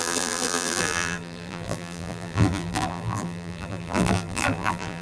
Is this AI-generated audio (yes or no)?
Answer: yes